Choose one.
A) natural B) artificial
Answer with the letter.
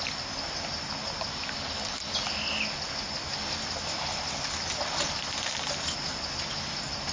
A